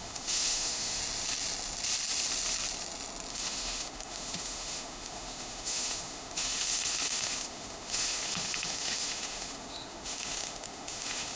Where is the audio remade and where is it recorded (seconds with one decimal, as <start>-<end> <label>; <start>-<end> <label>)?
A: 0.0-1.0 remade; 1.0-3.3 recorded; 3.3-11.4 remade